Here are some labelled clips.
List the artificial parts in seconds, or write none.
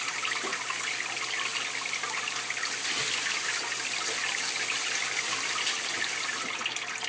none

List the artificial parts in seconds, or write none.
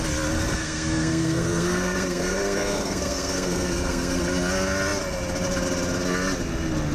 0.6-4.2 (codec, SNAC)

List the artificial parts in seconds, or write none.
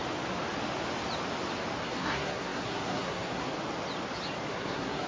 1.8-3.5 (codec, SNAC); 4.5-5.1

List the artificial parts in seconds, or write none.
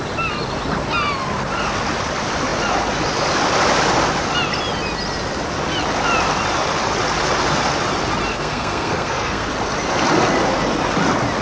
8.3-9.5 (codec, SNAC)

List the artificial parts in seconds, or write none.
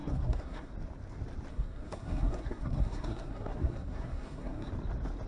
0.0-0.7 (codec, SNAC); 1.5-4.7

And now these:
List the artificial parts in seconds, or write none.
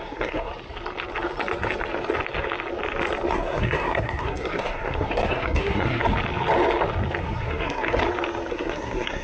0.0-0.5 (codec, SNAC); 3.3-6.0; 7.2-8.0; 8.5-9.2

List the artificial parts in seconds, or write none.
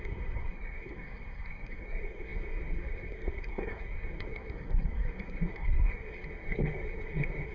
0.0-7.5 (codec, SNAC)